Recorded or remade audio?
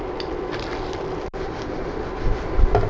remade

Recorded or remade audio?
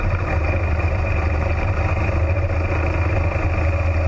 recorded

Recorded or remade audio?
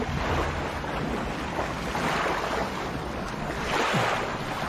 recorded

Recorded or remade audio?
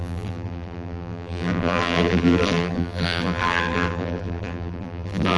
remade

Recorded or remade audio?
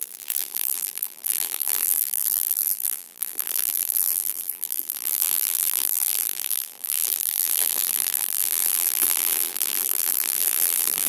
remade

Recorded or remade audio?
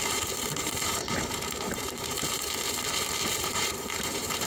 remade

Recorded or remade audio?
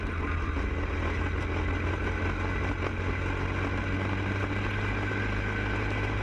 recorded